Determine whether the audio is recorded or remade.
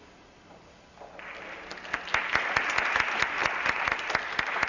recorded